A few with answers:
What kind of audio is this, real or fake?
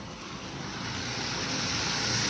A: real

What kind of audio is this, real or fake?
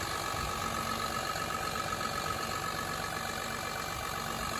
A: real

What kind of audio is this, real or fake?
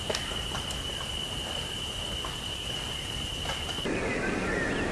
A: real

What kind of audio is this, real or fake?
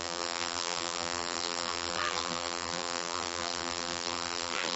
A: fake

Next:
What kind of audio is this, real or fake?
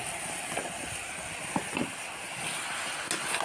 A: real